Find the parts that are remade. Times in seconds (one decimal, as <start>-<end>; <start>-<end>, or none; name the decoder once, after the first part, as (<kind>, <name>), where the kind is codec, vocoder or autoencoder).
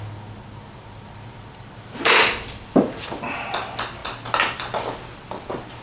none